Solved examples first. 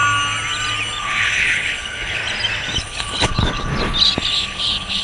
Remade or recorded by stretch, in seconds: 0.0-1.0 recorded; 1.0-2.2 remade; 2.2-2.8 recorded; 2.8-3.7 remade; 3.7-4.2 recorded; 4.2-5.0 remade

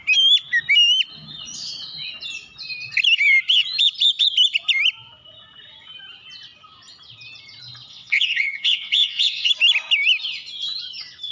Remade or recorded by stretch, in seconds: 0.0-7.9 recorded; 7.9-9.5 remade; 9.5-11.3 recorded

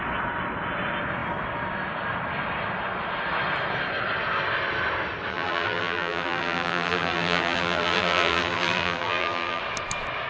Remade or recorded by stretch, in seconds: 0.0-5.3 recorded; 5.3-9.6 remade; 9.6-10.3 recorded

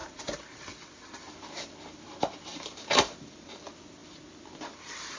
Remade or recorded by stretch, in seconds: 0.0-2.5 recorded; 2.5-3.6 remade; 3.6-5.2 recorded

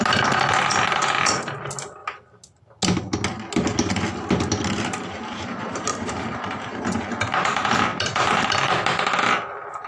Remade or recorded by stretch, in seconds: 0.0-3.7 recorded; 3.7-6.8 remade; 6.8-7.9 recorded; 7.9-9.0 remade; 9.0-9.9 recorded

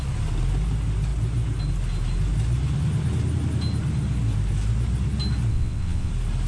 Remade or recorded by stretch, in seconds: 0.0-5.5 recorded; 5.5-6.1 remade; 6.1-6.5 recorded

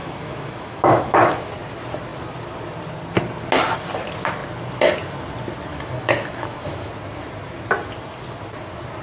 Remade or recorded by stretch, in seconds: 0.0-1.5 remade; 1.5-5.7 recorded; 5.7-6.9 remade; 6.9-9.0 recorded

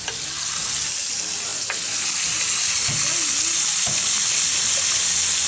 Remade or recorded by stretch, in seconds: 0.0-5.5 recorded